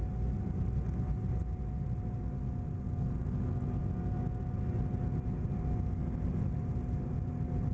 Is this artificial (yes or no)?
no